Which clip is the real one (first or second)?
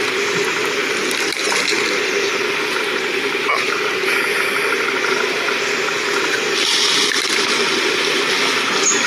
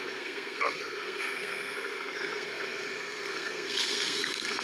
first